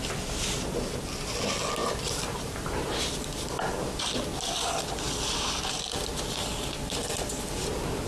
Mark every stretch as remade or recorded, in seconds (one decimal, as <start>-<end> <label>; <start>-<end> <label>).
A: 0.0-1.8 recorded; 1.8-3.6 remade; 3.6-7.0 recorded; 7.0-8.1 remade